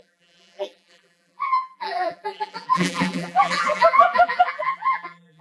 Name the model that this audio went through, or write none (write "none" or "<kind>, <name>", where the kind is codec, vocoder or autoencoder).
vocoder, BigVGAN v2